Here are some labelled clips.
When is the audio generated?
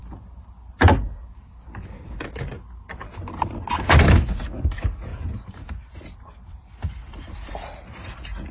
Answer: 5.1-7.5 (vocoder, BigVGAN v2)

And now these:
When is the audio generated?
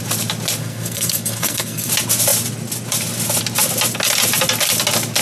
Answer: 0.6-1.9 (codec, SNAC)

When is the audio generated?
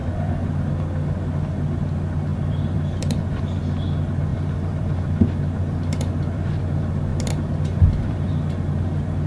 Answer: 0.0-0.7 (vocoder, BigVGAN v2); 2.3-3.4; 4.3-6.6; 7.1-8.3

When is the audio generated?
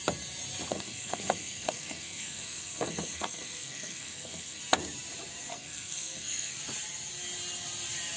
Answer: 0.7-4.6 (codec, SNAC); 5.5-6.6